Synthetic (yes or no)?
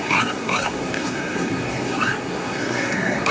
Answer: yes